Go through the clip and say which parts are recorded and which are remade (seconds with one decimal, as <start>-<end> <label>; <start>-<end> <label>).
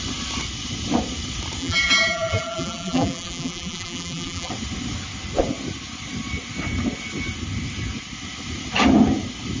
0.0-1.6 recorded; 1.6-4.5 remade; 4.5-9.6 recorded